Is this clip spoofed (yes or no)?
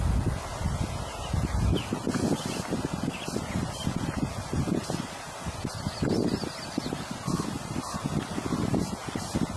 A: no